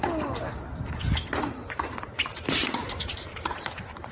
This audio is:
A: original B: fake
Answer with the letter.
A